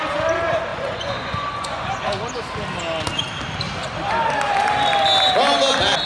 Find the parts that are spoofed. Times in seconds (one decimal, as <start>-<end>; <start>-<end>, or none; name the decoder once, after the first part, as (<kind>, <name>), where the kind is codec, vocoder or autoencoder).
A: 0.7-2.2 (vocoder, Vocos)

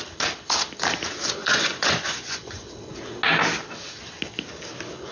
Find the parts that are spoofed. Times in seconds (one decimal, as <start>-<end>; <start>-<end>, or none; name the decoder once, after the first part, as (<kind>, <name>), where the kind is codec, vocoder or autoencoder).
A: 1.4-2.7 (vocoder, Vocos)

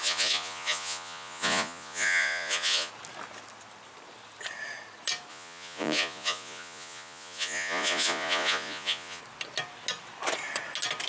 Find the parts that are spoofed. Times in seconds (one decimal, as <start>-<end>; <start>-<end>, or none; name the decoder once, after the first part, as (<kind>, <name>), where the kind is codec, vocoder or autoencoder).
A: 0.0-2.9 (vocoder, Vocos); 5.3-9.2

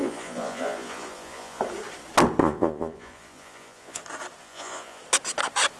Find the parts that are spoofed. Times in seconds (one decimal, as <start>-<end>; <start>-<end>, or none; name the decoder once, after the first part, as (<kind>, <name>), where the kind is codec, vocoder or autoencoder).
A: 0.0-1.6 (vocoder, Vocos); 2.4-4.0; 4.4-5.0

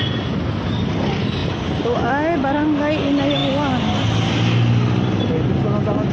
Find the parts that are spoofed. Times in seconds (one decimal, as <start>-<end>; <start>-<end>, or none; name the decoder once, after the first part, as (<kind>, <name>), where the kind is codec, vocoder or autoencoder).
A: none

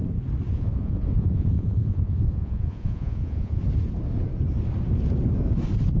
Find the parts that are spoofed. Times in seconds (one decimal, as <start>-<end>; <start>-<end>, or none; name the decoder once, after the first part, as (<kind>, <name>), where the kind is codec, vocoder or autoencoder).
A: 0.5-3.6 (vocoder, Vocos)

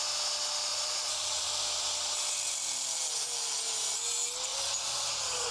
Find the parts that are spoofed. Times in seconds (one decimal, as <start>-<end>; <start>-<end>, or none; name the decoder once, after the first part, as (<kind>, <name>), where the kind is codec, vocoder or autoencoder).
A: 0.7-1.5 (vocoder, Vocos); 4.5-5.5

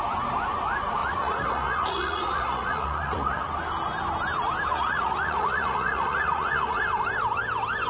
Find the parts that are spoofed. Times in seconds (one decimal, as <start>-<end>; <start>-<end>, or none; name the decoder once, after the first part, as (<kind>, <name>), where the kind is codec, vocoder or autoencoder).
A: 1.0-3.5 (vocoder, Vocos); 4.7-6.8